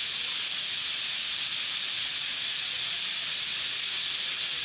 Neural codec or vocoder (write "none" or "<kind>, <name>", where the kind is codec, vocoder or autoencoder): none